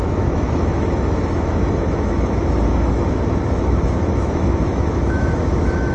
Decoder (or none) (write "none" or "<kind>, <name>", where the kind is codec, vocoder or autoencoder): autoencoder, DAC-VAE